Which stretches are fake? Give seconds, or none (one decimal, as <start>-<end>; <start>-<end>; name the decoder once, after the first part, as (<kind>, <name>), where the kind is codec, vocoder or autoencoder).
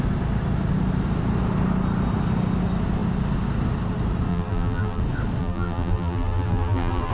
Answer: 4.3-5.0 (vocoder, BigVGAN v2); 5.4-7.1